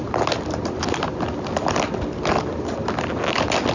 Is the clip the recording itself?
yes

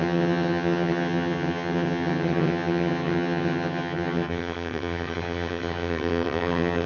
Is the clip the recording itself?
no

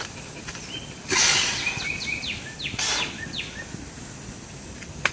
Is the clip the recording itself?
yes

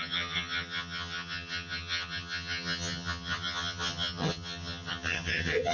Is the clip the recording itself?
no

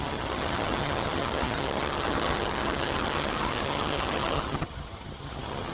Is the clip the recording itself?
no